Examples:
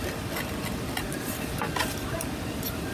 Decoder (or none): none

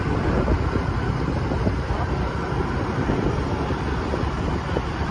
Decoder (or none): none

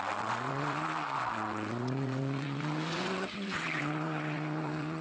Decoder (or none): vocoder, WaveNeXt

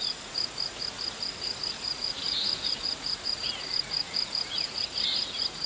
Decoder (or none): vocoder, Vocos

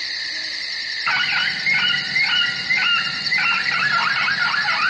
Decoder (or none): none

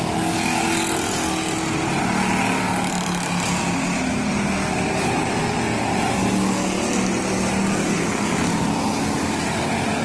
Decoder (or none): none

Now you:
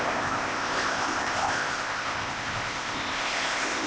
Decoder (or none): codec, ZipCodec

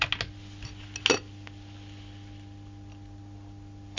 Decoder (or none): none